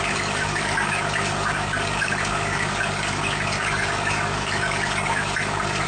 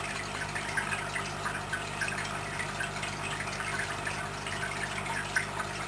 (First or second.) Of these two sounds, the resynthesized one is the first